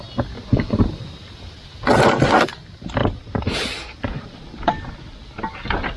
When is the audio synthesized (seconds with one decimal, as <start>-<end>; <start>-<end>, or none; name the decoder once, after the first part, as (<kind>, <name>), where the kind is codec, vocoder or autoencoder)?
3.0-4.0 (vocoder, BigVGAN v2)